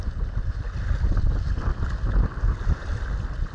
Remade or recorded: recorded